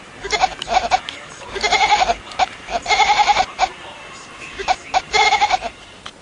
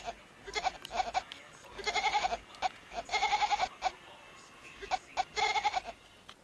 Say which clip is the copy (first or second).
first